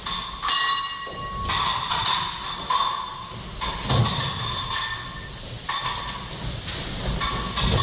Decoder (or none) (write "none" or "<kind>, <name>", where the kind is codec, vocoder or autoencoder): none